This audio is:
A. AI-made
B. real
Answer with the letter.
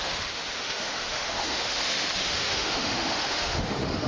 A